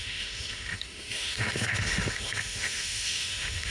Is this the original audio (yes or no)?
no